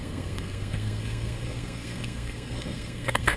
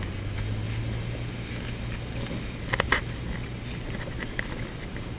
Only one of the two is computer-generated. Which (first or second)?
first